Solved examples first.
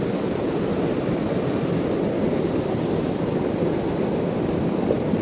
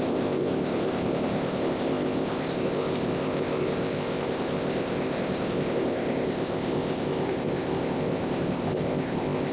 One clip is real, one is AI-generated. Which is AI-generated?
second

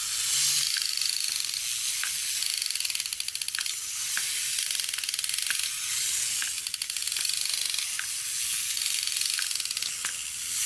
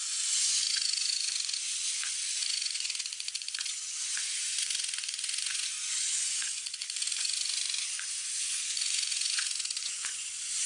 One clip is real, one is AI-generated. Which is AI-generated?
second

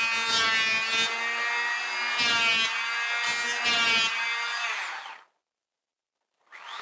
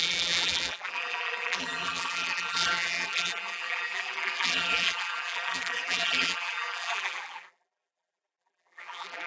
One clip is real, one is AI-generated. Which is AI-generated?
second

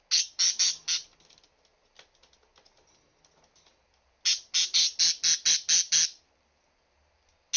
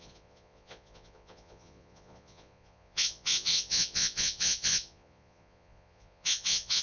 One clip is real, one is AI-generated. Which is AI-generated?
second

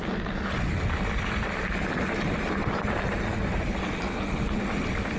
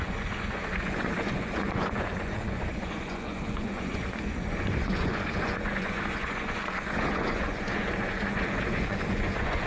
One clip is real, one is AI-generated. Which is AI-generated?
second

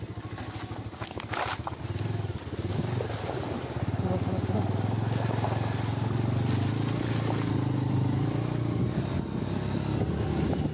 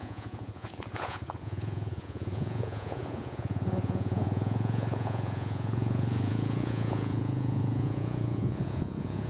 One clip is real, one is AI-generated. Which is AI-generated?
second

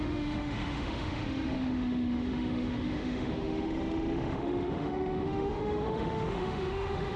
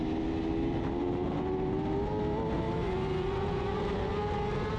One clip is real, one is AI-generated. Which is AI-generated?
first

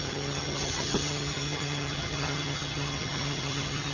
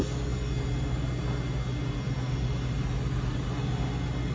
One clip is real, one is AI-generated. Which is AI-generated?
first